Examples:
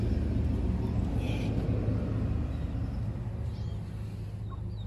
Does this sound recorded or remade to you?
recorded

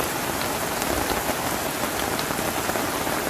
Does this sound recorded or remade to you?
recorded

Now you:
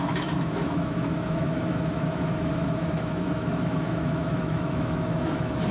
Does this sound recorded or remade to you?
remade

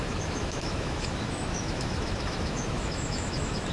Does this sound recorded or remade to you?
remade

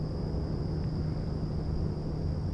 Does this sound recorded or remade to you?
recorded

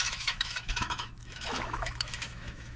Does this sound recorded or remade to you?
remade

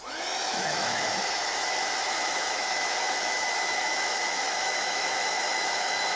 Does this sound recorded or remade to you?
remade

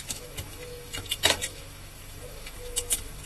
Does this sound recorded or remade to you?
remade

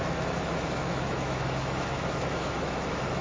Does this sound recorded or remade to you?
remade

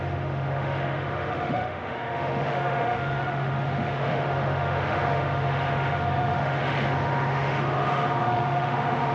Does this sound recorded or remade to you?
remade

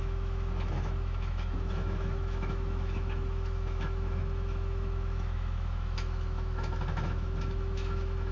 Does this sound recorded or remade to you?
remade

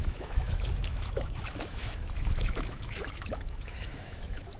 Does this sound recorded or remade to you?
remade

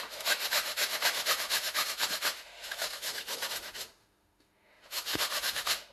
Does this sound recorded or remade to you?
remade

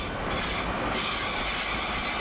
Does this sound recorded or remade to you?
recorded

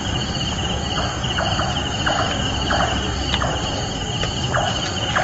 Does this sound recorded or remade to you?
recorded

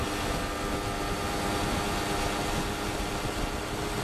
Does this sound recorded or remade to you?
recorded